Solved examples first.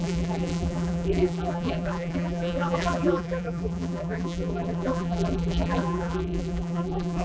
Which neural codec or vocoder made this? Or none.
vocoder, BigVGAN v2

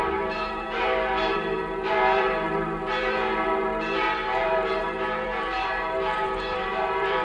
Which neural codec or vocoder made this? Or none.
vocoder, BigVGAN v2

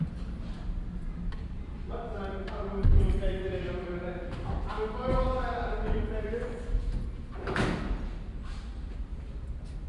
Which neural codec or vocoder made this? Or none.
none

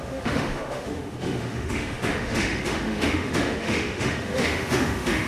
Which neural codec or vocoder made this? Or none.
autoencoder, DAC-VAE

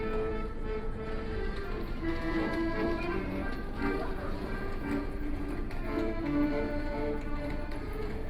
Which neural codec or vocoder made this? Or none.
vocoder, Vocos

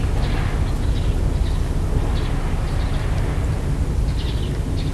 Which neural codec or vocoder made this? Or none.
none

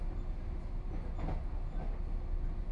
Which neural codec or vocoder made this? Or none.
none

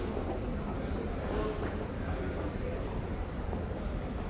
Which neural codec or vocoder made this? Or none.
vocoder, BigVGAN v2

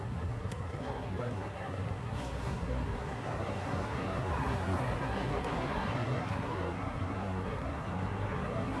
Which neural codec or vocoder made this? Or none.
codec, SNAC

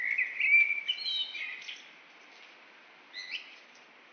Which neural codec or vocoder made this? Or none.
none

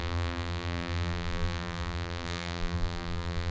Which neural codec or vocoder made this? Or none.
vocoder, BigVGAN v2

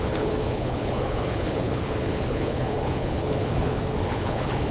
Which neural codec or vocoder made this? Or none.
codec, HILCodec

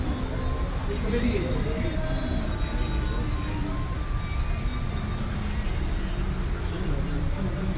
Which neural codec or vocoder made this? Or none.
none